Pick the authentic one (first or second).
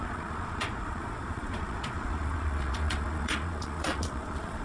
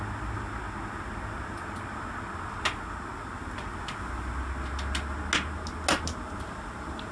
second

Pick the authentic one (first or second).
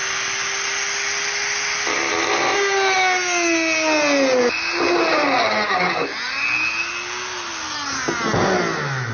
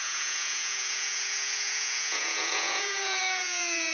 first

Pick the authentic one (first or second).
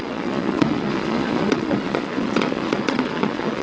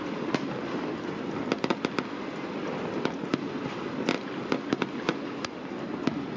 second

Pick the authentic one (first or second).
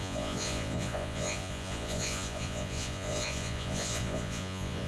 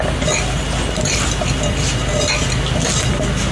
second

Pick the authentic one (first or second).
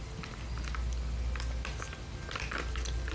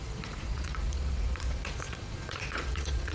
first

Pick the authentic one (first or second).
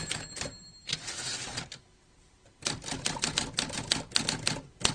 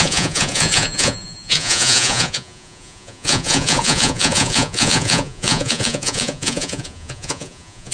first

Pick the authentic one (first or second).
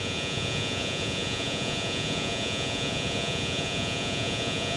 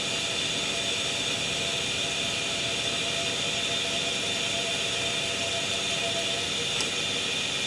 second